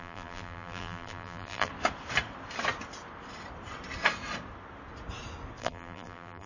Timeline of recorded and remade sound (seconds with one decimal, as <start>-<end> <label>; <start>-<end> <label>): 0.0-1.7 remade; 1.7-5.6 recorded; 5.6-6.5 remade